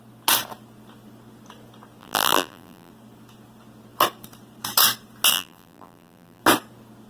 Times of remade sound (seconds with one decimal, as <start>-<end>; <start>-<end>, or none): 2.0-2.9; 5.3-6.4